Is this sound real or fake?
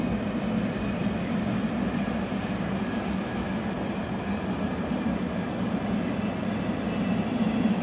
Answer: real